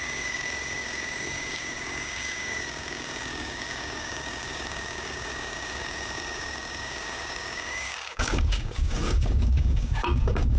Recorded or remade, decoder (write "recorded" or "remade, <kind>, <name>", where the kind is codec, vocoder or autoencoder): remade, codec, DAC